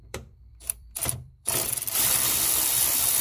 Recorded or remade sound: remade